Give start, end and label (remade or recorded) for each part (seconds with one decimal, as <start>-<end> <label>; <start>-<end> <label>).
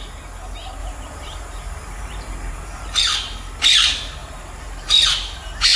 0.0-0.8 recorded; 0.8-3.0 remade; 3.0-4.2 recorded; 4.2-5.8 remade